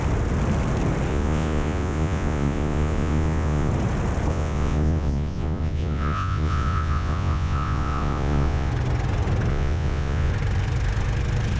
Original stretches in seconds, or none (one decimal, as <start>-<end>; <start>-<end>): 0.0-1.1; 3.7-4.3; 8.7-9.5; 10.3-11.6